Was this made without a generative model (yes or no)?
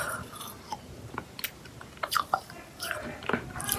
yes